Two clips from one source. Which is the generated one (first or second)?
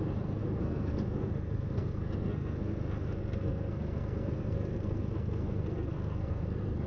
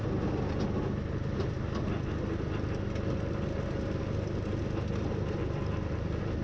first